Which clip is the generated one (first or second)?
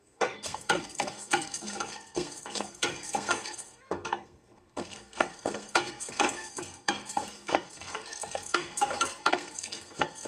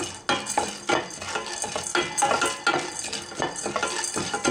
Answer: first